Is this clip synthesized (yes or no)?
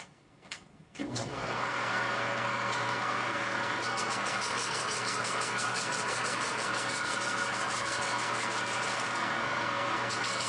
yes